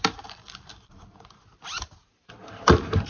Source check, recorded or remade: recorded